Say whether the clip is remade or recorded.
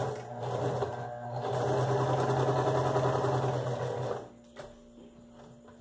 recorded